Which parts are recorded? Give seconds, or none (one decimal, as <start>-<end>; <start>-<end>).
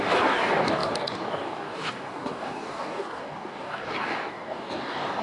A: none